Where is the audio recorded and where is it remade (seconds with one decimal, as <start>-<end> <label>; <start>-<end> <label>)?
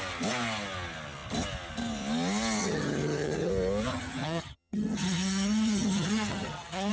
0.0-2.6 recorded; 2.6-3.5 remade; 3.5-3.9 recorded; 3.9-6.9 remade